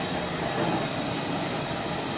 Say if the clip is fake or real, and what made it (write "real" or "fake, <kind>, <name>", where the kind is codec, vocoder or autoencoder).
real